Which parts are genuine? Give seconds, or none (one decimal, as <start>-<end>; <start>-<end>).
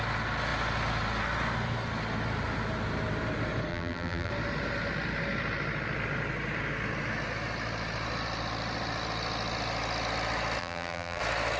0.0-3.7; 4.3-10.6; 11.2-11.6